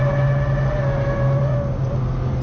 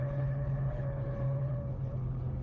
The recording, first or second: first